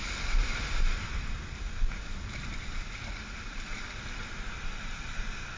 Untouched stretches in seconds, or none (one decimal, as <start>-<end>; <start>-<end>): 0.0-5.6